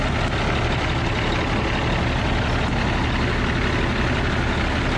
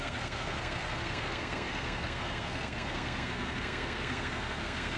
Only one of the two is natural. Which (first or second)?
first